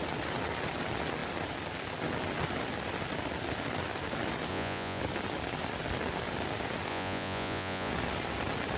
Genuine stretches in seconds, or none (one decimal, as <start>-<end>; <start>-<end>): 0.0-4.5; 5.0-6.9; 7.9-8.8